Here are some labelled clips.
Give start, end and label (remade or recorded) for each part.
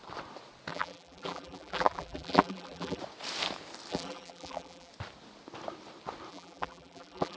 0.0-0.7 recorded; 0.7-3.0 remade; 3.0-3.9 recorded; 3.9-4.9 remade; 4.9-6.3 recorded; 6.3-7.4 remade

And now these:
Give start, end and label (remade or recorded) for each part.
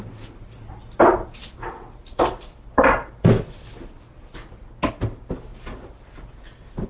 0.0-1.1 recorded; 1.1-3.7 remade; 3.7-5.5 recorded; 5.5-6.9 remade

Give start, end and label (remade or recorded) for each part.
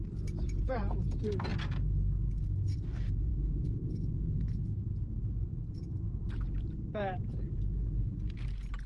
0.0-1.5 remade; 1.5-2.9 recorded; 2.9-8.9 remade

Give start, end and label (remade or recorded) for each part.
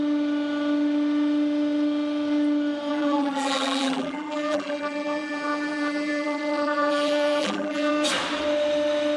0.0-2.9 recorded; 2.9-7.9 remade; 7.9-9.2 recorded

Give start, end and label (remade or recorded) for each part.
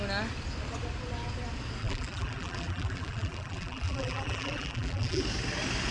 0.0-1.8 recorded; 1.8-5.2 remade; 5.2-5.9 recorded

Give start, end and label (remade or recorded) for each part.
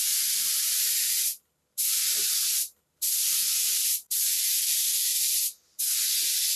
0.0-5.0 remade; 5.0-6.6 recorded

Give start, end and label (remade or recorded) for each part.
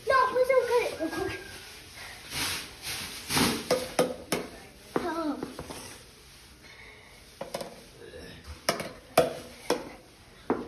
0.0-10.7 recorded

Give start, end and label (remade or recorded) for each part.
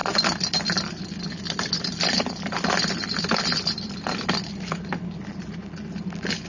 0.0-3.9 remade; 3.9-6.5 recorded